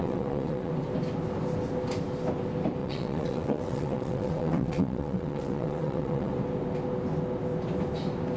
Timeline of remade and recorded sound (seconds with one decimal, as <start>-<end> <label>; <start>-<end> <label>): 0.0-0.7 remade; 0.7-2.8 recorded; 2.8-6.3 remade; 6.3-8.4 recorded